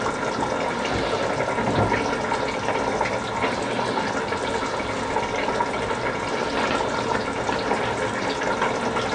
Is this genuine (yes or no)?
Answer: yes